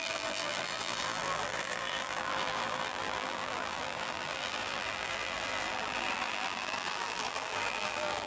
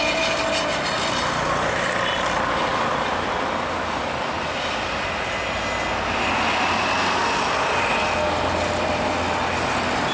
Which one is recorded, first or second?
second